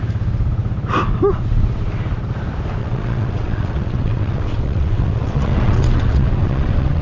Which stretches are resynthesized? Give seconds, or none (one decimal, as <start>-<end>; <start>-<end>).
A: 2.8-7.0